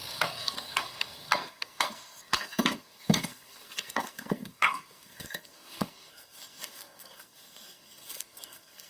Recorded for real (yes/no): no